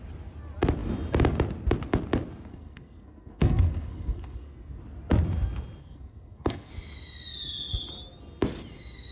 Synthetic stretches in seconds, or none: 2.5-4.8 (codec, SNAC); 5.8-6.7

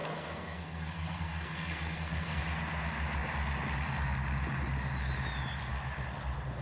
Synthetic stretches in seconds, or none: 0.0-2.4 (codec, SNAC)

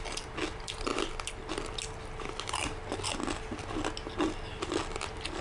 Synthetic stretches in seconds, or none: none

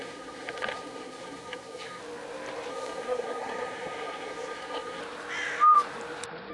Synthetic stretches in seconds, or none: 0.0-2.0 (codec, SNAC); 2.7-5.0

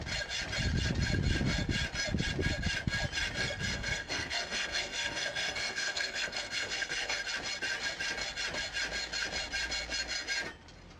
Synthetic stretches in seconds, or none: 3.4-7.2 (codec, SNAC)

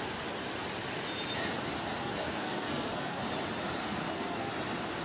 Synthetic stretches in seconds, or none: 2.0-3.3 (codec, SNAC); 3.8-4.5